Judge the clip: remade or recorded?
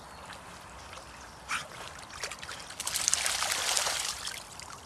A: recorded